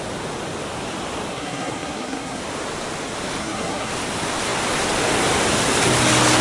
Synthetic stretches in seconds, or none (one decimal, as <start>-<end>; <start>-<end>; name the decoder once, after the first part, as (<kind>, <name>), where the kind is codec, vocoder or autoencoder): 1.3-2.4 (codec, SNAC); 3.4-3.9